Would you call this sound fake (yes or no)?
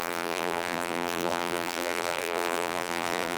yes